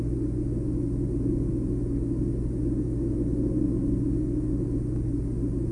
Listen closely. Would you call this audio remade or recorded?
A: recorded